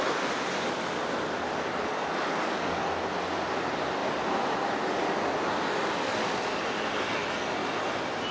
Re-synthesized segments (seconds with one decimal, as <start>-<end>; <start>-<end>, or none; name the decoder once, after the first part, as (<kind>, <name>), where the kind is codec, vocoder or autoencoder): 1.4-2.9 (codec, DAC)